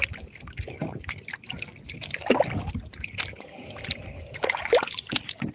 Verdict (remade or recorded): recorded